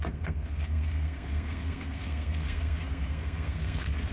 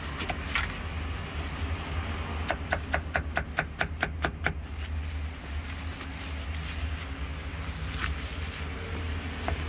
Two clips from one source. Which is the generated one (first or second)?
first